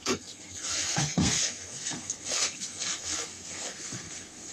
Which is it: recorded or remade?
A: remade